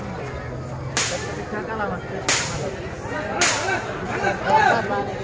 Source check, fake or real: real